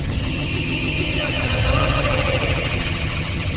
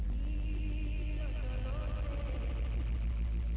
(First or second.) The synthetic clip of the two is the first